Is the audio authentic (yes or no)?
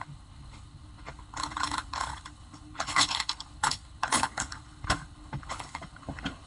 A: no